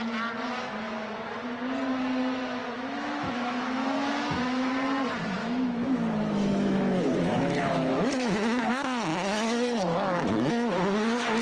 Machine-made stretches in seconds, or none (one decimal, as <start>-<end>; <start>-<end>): 2.6-4.7; 5.4-8.7; 9.1-10.5